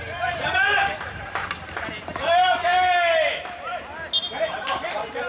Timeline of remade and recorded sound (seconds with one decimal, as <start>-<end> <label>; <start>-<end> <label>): 0.0-1.4 remade; 1.4-2.2 recorded; 2.2-2.7 remade; 2.7-4.5 recorded; 4.5-5.3 remade